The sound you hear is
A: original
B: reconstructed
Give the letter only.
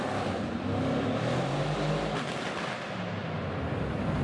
A